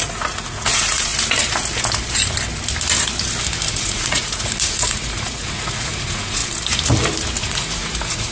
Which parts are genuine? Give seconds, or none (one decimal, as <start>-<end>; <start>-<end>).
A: 1.1-3.7; 6.4-7.4